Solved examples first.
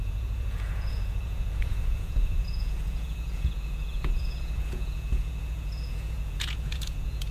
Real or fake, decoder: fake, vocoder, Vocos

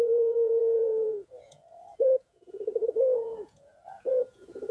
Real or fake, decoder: fake, vocoder, Vocos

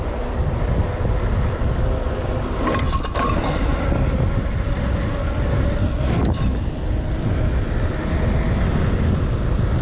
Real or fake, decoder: real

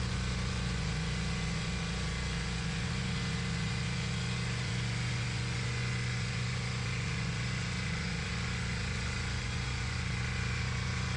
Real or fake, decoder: fake, vocoder, Vocos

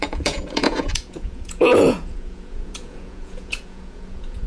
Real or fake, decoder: fake, vocoder, Vocos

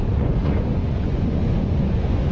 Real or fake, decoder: fake, vocoder, Vocos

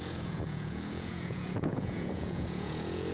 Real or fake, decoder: fake, vocoder, Vocos